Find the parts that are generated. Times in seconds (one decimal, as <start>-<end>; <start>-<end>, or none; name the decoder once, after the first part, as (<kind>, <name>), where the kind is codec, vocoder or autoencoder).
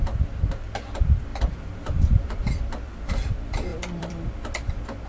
1.3-3.1 (vocoder, BigVGAN v2); 3.7-4.3